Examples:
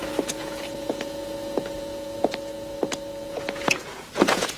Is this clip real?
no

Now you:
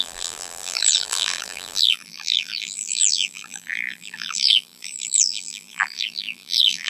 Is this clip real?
no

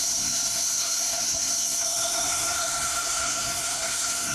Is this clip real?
no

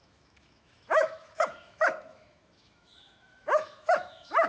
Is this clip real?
no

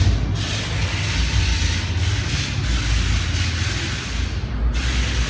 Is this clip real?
yes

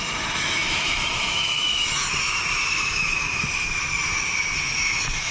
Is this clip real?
no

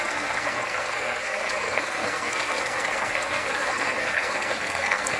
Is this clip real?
no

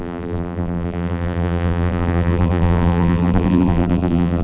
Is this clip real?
no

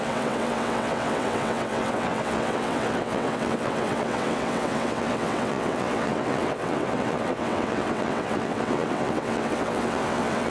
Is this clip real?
no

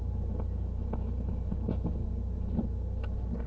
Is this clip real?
yes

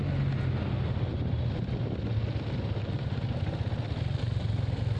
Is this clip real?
yes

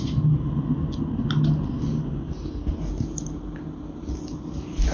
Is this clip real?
yes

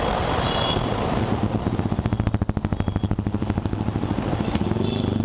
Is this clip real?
yes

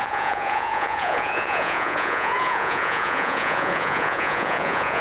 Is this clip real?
no